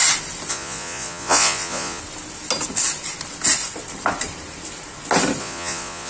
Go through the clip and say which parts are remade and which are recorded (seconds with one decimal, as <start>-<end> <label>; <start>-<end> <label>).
0.0-0.5 recorded; 0.5-2.0 remade; 2.0-5.4 recorded; 5.4-6.1 remade